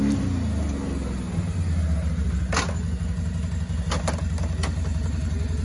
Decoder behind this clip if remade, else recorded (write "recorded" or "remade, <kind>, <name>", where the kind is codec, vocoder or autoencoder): recorded